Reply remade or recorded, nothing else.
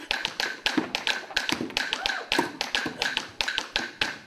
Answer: recorded